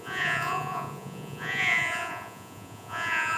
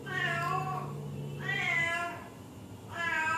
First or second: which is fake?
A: first